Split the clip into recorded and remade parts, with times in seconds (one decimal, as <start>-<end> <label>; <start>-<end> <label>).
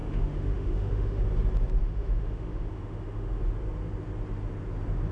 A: 0.0-1.2 remade; 1.2-1.8 recorded; 1.8-3.4 remade; 3.4-5.1 recorded